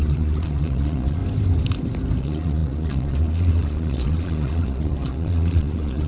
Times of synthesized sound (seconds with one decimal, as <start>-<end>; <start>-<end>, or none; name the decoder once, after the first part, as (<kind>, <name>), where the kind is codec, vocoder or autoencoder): 0.0-1.2 (vocoder, Vocos); 2.2-6.1